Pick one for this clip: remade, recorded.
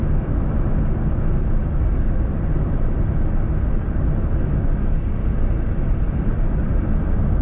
recorded